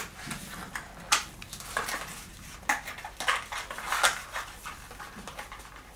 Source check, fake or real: real